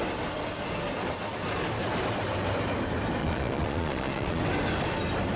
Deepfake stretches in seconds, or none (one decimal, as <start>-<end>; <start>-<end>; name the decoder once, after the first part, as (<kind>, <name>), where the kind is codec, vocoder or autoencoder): 3.2-4.4 (vocoder, Vocos)